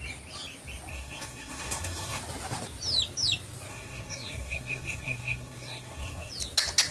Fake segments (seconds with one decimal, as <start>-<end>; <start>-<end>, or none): 0.9-2.2; 3.7-6.3